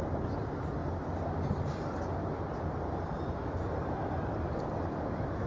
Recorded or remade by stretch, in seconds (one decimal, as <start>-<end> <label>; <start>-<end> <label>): 0.0-0.8 remade; 0.8-3.6 recorded; 3.6-5.5 remade

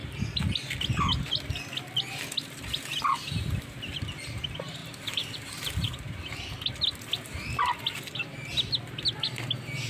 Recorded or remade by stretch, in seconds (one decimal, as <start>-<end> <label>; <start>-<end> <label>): 0.0-4.8 recorded; 4.8-6.0 remade; 6.0-9.9 recorded

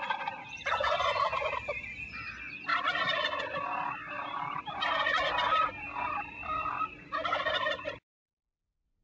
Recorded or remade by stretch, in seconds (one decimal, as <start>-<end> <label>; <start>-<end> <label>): 0.0-9.0 recorded

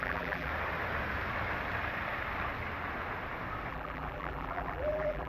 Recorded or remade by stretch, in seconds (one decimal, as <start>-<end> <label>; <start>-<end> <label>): 0.0-0.5 remade; 0.5-3.7 recorded; 3.7-5.3 remade

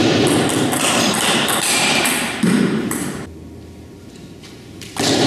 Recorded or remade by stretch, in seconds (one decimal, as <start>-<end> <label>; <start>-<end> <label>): 0.0-3.2 remade; 3.2-5.3 recorded